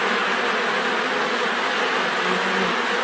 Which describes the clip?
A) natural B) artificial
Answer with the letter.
A